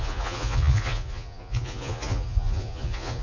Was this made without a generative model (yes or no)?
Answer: no